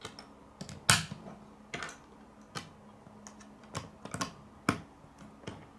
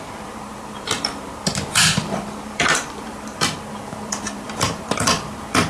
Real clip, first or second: first